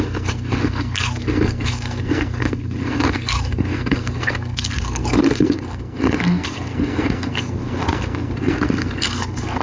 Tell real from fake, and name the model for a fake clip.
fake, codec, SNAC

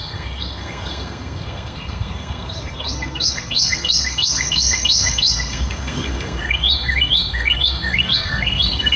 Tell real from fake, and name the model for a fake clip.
fake, codec, SNAC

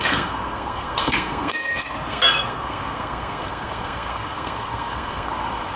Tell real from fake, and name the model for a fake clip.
fake, codec, SNAC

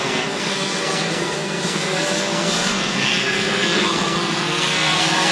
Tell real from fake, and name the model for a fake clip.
fake, codec, SNAC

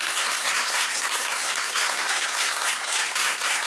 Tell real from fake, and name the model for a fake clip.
fake, codec, SNAC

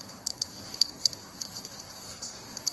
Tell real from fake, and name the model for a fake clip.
fake, codec, SNAC